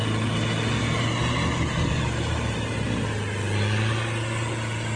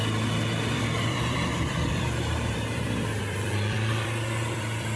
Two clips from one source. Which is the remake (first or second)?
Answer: second